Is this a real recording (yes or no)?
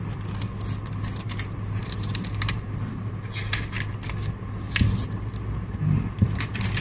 yes